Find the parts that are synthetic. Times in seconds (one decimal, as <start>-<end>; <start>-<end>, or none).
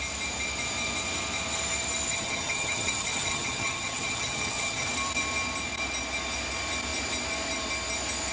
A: 2.1-4.9